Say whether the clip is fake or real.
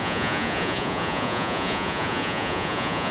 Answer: fake